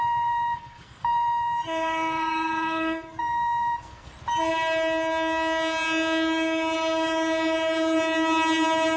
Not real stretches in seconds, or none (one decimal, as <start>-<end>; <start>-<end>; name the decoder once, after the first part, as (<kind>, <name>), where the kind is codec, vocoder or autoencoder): 0.0-4.1 (codec, SNAC)